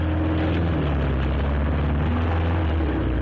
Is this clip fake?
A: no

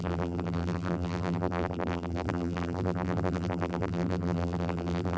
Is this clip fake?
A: yes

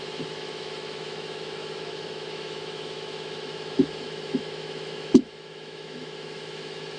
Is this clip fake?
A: yes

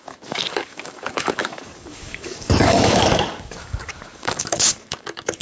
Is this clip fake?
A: yes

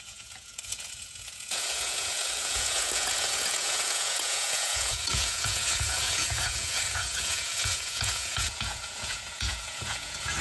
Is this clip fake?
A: yes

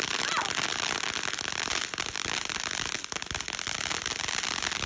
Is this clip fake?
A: no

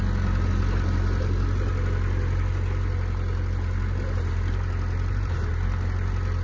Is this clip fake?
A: no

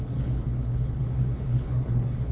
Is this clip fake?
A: yes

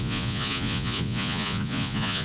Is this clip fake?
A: yes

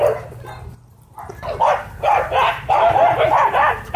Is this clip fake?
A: no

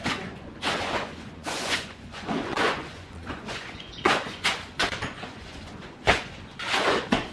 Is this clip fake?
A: yes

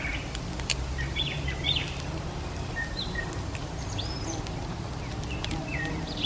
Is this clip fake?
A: yes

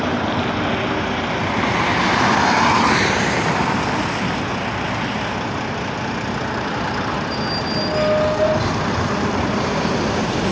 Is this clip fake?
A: no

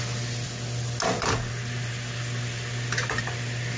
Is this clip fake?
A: no